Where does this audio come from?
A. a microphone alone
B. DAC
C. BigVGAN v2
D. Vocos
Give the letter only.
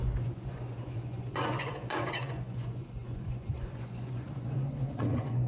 D